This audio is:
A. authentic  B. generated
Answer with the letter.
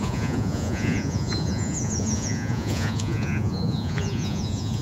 B